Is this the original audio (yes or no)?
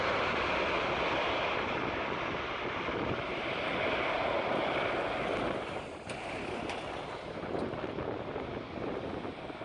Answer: yes